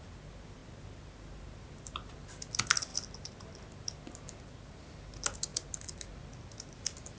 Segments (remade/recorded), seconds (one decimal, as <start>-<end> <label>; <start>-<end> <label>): 0.0-7.2 recorded